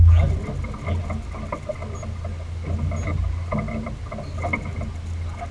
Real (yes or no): yes